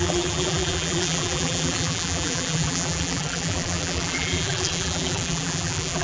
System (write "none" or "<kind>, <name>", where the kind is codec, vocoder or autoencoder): vocoder, BigVGAN v2